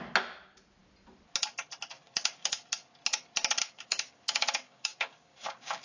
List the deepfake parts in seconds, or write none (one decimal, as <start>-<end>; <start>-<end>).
1.9-2.6; 3.6-5.8